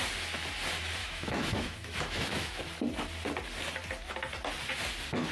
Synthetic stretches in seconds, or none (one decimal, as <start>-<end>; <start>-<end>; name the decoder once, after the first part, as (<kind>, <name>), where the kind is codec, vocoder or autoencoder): 1.0-2.6 (autoencoder, DAC-VAE)